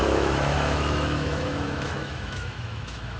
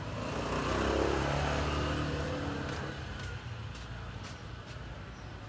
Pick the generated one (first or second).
first